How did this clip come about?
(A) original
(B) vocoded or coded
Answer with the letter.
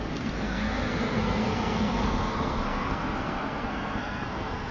B